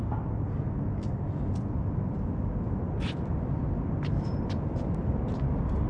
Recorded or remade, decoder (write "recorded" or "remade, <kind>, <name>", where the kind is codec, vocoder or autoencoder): recorded